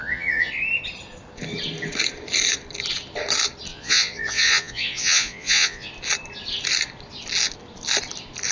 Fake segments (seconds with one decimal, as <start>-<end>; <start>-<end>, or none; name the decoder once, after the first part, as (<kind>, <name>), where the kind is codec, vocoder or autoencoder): 0.0-0.5 (vocoder, Vocos); 3.7-5.9